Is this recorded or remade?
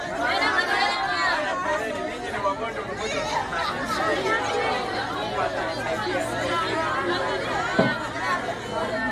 recorded